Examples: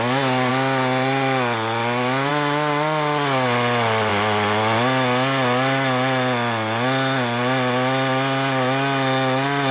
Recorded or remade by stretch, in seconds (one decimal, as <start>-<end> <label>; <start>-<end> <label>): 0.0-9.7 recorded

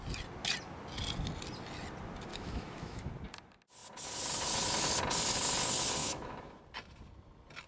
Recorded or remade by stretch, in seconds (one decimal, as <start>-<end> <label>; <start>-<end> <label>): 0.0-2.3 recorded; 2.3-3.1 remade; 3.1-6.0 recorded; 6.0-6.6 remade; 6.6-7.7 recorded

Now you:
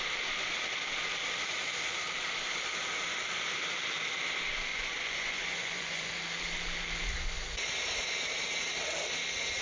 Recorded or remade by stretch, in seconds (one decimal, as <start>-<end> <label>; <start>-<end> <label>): 0.0-4.7 recorded; 4.7-6.1 remade; 6.1-9.6 recorded

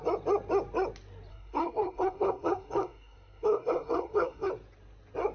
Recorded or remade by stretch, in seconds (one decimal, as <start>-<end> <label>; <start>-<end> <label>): 0.0-1.3 recorded; 1.3-4.5 remade; 4.5-5.3 recorded